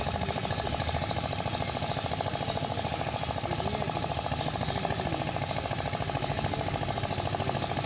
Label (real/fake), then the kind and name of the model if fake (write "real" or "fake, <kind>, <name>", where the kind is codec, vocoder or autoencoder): real